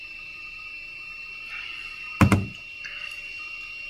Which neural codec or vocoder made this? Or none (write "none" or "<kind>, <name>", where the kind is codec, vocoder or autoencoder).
none